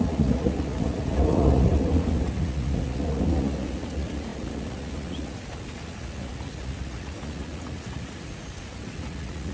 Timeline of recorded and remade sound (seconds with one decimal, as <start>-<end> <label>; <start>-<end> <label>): 0.0-9.5 remade